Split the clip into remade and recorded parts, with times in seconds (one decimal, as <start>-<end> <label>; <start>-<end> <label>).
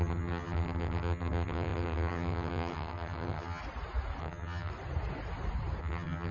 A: 0.0-3.6 remade; 3.6-4.2 recorded; 4.2-4.7 remade; 4.7-5.8 recorded; 5.8-6.3 remade